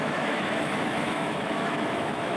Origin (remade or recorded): remade